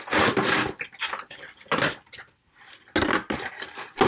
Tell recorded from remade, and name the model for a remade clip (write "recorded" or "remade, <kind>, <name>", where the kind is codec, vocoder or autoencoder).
recorded